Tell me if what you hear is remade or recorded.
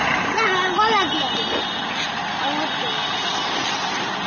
recorded